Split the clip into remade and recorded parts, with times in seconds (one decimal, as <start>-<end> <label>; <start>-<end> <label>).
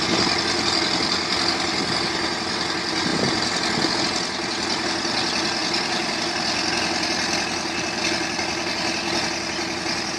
0.0-10.2 recorded